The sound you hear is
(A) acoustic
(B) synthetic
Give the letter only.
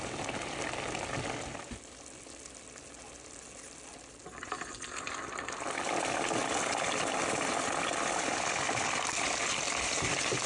A